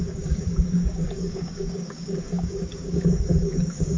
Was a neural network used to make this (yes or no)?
yes